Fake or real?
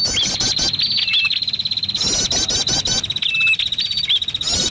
real